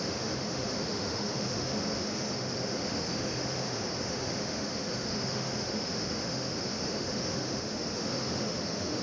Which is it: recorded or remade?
remade